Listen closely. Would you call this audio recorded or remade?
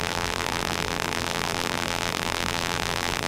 remade